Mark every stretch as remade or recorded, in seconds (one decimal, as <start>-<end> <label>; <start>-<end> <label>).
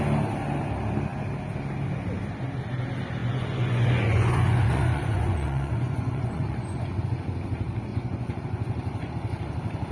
0.0-3.2 recorded; 3.2-7.0 remade; 7.0-7.9 recorded; 7.9-9.1 remade; 9.1-9.9 recorded